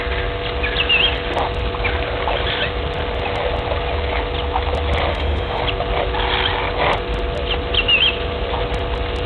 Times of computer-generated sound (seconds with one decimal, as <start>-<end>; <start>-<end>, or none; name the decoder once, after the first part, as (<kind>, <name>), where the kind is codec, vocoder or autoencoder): 5.1-5.6 (autoencoder, DAC-VAE)